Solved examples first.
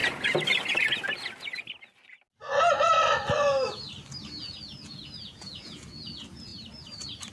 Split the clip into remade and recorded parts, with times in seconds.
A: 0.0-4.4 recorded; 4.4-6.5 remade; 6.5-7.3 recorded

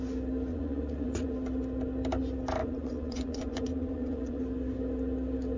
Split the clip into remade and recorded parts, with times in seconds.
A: 0.0-0.5 recorded; 0.5-1.3 remade; 1.3-2.6 recorded; 2.6-4.4 remade; 4.4-5.6 recorded

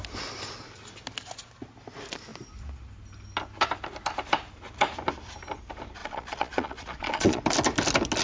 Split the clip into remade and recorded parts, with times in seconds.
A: 0.0-6.0 recorded; 6.0-7.4 remade; 7.4-8.2 recorded